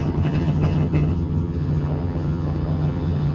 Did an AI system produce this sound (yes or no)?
yes